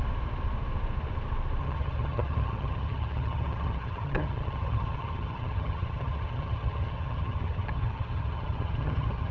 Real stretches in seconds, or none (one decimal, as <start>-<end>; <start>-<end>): 0.0-1.6